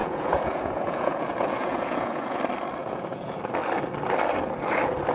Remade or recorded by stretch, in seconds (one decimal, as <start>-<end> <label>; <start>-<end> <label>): 0.0-2.4 remade; 2.4-2.8 recorded; 2.8-3.4 remade; 3.4-5.1 recorded